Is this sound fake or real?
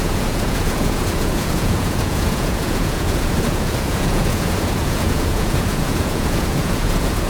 fake